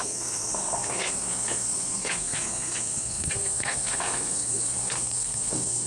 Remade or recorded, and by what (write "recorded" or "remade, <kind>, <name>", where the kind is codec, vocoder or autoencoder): remade, codec, SNAC